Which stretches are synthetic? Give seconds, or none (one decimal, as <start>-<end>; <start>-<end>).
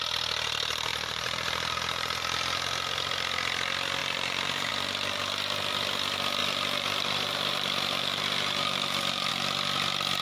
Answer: 0.9-2.6; 4.0-4.7; 6.4-9.3